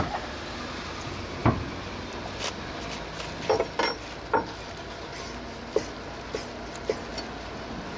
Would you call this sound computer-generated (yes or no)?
no